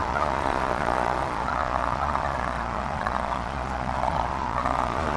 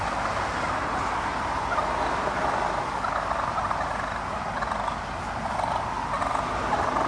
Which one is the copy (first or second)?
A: first